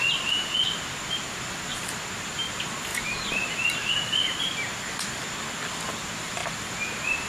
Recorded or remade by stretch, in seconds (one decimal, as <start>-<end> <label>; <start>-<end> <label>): 0.0-7.3 recorded